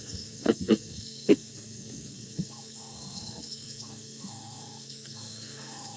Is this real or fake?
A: fake